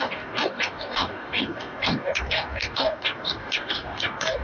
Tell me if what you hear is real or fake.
fake